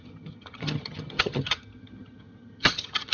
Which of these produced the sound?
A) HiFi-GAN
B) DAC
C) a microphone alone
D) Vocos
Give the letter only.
A